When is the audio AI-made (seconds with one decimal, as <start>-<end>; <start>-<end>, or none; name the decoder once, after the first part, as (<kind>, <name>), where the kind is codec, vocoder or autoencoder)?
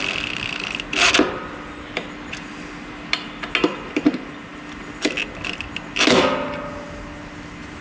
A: none